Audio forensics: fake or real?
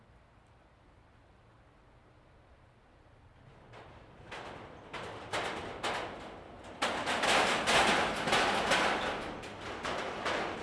real